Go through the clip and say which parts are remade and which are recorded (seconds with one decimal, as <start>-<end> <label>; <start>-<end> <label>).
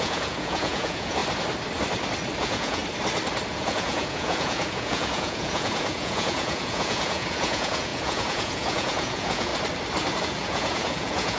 0.0-1.2 remade; 1.2-2.4 recorded; 2.4-2.8 remade; 2.8-3.5 recorded; 3.5-9.5 remade; 9.5-10.2 recorded; 10.2-11.4 remade